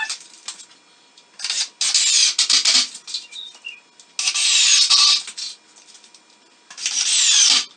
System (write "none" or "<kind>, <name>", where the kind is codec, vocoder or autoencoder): none